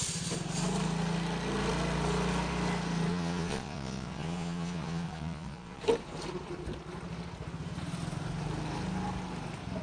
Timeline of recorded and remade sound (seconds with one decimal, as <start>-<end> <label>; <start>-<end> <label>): 0.0-3.1 recorded; 3.1-5.8 remade; 5.8-9.8 recorded